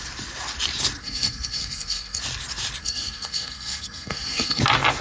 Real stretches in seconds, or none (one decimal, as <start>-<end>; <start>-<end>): 0.0-1.0; 2.2-2.8; 4.6-5.0